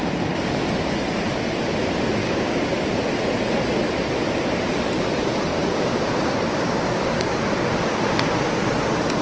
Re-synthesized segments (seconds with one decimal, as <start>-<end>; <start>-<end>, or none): 2.2-2.7; 5.5-7.3